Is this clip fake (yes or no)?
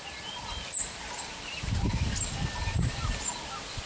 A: no